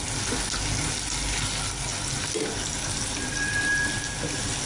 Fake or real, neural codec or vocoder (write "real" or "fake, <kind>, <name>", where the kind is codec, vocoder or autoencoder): real